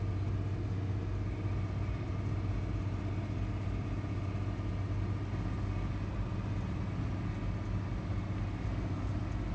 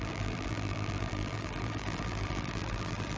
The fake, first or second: second